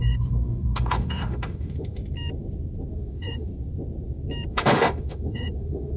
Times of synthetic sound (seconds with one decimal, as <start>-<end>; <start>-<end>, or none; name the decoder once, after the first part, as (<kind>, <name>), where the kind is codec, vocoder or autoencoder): 0.0-2.0 (autoencoder, DAC-VAE); 2.9-3.5; 4.5-6.0